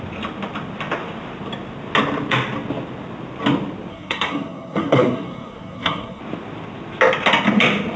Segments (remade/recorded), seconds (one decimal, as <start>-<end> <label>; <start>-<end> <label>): 0.0-3.9 recorded; 3.9-6.2 remade; 6.2-8.0 recorded